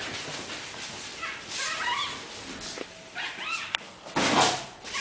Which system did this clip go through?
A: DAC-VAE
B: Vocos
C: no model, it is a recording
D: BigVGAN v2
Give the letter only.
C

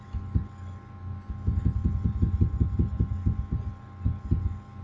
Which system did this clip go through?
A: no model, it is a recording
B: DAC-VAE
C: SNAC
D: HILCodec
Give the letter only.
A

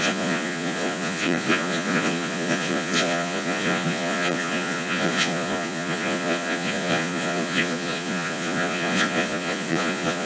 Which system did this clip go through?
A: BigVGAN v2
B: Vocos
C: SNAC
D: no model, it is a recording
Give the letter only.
B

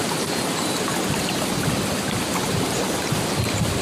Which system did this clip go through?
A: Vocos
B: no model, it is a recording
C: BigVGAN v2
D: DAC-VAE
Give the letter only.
C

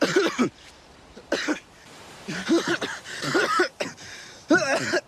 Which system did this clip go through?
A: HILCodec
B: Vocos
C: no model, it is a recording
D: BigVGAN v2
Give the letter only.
D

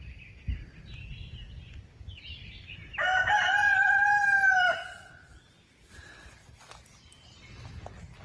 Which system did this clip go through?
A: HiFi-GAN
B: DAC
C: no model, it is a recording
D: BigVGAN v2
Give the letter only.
C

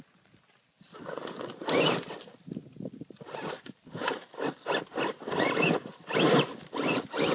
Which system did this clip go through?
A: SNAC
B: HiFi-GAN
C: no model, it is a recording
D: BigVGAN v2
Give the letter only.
C